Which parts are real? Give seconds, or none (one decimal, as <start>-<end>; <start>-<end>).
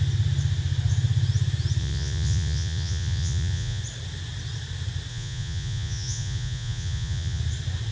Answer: 0.0-1.8; 3.8-5.1; 7.4-7.9